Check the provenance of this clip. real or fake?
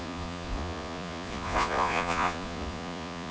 fake